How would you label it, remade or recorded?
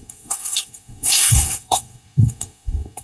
remade